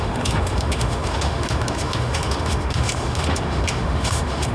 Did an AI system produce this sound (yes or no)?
yes